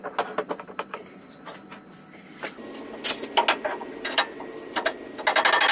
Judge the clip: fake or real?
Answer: real